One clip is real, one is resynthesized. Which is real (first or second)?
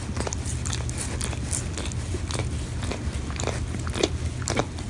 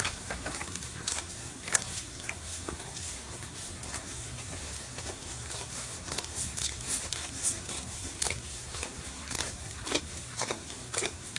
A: first